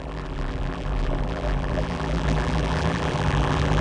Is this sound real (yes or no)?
no